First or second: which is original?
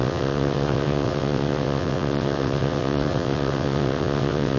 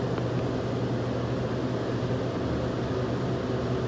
second